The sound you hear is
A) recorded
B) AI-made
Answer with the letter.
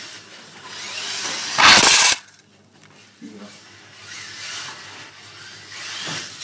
A